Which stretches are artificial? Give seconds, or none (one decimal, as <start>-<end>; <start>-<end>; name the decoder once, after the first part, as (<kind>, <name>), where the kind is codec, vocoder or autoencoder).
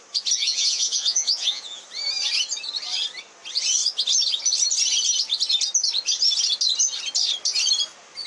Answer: 0.4-1.8 (vocoder, Vocos)